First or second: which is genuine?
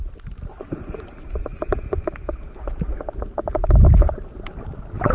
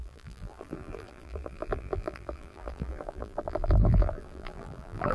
first